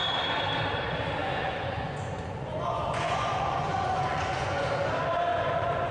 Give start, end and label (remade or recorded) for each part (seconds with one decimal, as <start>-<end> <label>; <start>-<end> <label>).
0.0-1.2 recorded; 1.2-4.7 remade; 4.7-5.3 recorded; 5.3-5.9 remade